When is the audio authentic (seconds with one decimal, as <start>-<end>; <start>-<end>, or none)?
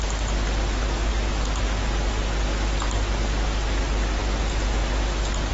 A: 0.0-5.5